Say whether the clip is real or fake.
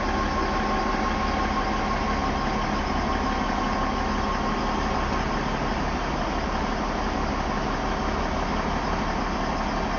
real